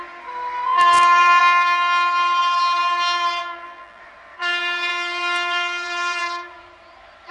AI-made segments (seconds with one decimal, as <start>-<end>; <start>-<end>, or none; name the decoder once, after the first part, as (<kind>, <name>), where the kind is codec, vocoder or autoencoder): 0.7-1.4 (vocoder, BigVGAN v2); 3.4-4.0; 4.9-6.2